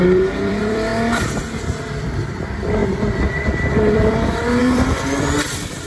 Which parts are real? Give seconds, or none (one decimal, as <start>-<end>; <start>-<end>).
0.9-2.0